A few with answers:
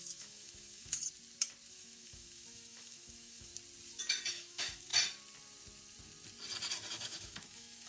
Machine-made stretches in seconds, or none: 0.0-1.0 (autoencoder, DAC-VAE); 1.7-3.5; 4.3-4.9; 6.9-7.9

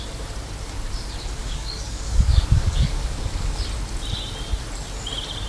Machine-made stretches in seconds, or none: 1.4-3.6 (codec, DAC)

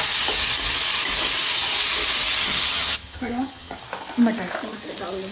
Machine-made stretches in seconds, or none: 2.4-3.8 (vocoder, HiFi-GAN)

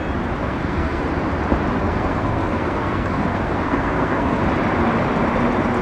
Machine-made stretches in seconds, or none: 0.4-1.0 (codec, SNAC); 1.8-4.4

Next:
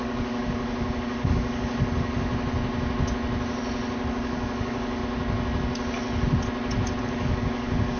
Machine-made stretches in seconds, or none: 0.0-2.3 (codec, DAC); 4.1-5.0; 7.0-8.0

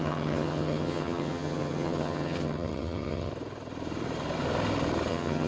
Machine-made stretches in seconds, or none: 0.0-3.3 (vocoder, HiFi-GAN); 5.1-5.5